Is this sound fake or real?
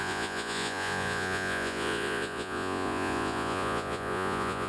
fake